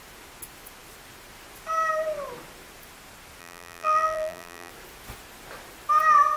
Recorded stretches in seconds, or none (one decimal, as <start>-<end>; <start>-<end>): 0.0-3.4; 4.7-6.4